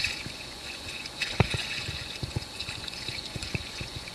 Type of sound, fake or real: fake